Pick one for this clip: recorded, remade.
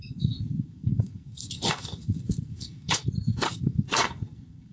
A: remade